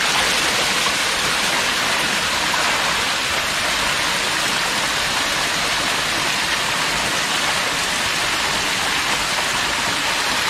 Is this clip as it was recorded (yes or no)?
yes